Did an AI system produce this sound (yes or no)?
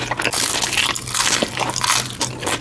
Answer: no